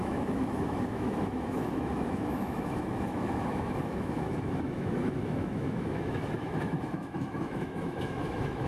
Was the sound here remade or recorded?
remade